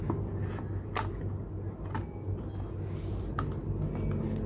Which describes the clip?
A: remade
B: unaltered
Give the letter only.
B